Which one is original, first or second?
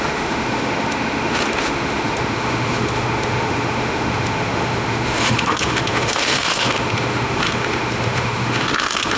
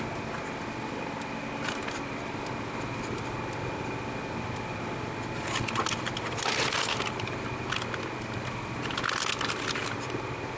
second